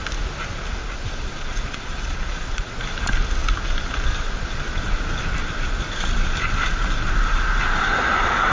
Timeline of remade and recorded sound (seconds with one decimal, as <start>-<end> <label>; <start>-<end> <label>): 0.0-0.8 recorded; 0.8-2.8 remade; 2.8-8.5 recorded